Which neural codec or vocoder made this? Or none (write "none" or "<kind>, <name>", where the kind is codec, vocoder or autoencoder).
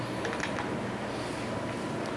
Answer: none